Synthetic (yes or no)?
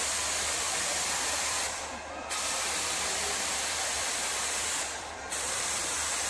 yes